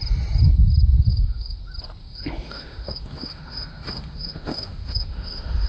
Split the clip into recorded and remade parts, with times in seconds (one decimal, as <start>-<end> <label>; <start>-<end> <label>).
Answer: 0.0-1.1 recorded; 1.1-1.6 remade; 1.6-2.0 recorded; 2.0-5.7 remade